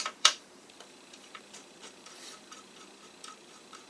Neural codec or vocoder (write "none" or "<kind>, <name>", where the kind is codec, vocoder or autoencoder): vocoder, BigVGAN v2